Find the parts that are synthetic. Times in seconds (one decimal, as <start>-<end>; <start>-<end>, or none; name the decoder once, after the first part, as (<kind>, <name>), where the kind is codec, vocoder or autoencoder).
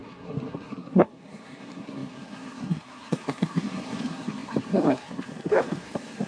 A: 0.0-6.3 (codec, SNAC)